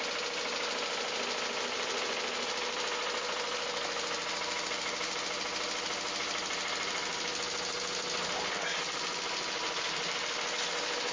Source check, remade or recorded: recorded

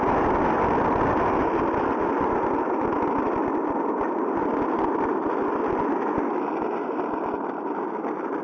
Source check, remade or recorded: recorded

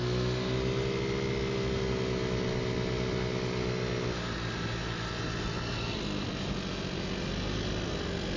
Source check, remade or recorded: recorded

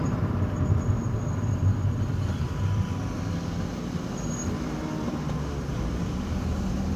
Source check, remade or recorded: remade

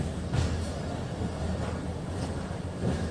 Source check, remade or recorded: recorded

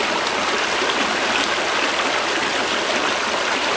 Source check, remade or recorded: recorded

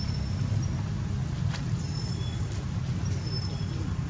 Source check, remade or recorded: recorded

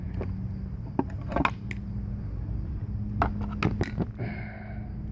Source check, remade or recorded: recorded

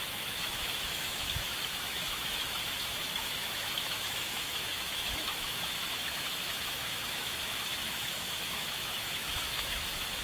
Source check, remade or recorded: remade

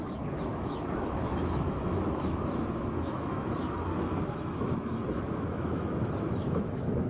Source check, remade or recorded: remade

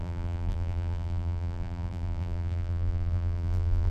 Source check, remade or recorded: remade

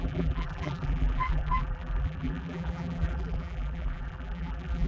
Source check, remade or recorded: remade